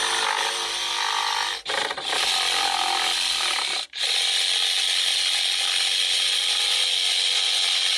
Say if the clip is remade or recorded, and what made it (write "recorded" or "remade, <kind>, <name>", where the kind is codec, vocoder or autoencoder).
recorded